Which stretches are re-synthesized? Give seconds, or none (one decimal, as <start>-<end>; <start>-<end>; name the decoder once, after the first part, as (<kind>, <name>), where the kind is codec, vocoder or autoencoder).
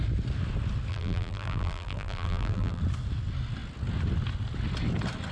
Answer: 0.9-2.8 (vocoder, BigVGAN v2)